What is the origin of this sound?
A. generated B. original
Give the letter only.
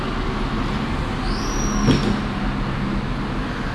B